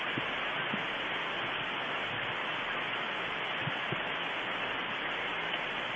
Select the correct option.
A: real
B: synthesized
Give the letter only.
A